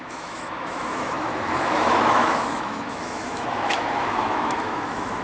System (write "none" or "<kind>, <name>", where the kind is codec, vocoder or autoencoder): autoencoder, DAC-VAE